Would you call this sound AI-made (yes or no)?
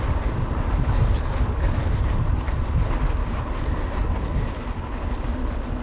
no